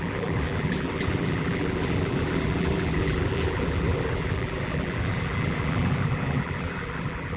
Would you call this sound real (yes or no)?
no